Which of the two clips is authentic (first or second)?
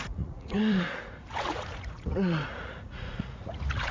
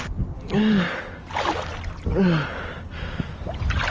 second